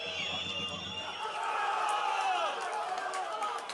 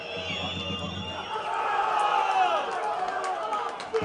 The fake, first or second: first